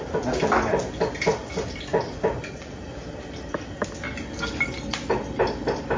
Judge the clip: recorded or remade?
recorded